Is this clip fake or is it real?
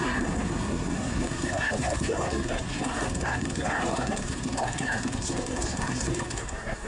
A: fake